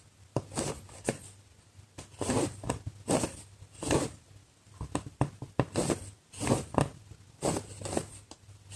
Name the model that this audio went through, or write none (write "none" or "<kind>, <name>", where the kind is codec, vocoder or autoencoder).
none